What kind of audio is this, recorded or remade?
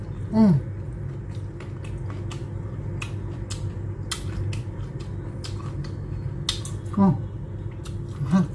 recorded